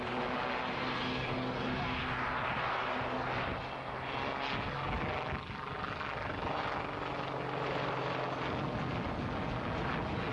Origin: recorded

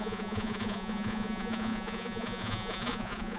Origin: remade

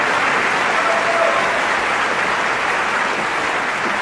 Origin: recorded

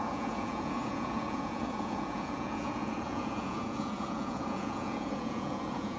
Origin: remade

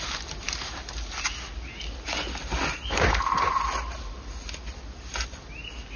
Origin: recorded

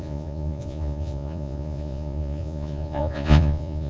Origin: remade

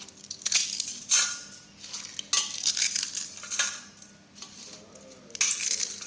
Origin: recorded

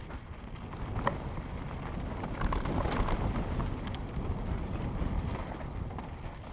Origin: recorded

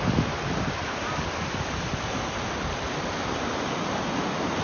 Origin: recorded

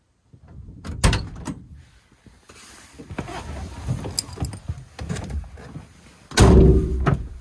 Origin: recorded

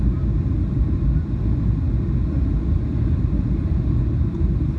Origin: recorded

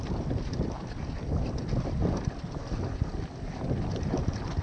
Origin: recorded